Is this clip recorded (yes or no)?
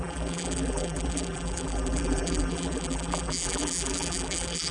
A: no